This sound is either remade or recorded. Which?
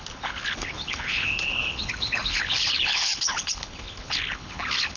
remade